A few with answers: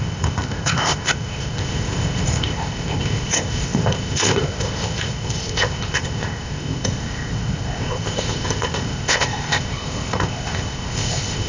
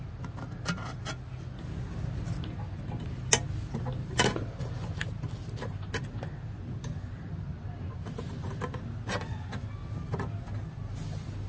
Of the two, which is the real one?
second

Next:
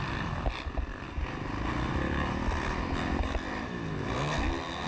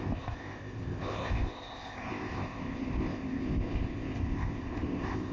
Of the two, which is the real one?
first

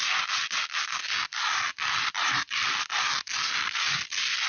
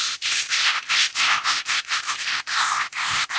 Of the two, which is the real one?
first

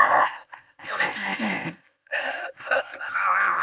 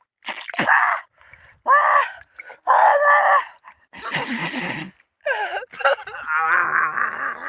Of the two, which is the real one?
second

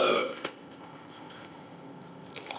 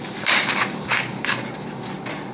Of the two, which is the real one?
second